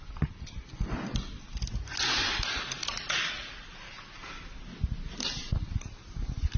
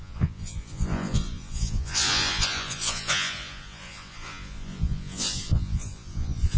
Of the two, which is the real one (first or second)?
first